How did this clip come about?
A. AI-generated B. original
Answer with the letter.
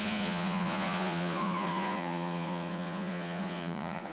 A